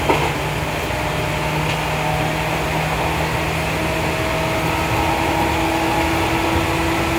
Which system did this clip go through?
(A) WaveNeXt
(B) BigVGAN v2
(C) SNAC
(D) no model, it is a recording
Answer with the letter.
D